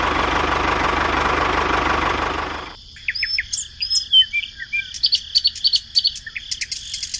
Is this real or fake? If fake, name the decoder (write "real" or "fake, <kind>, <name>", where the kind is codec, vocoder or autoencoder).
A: real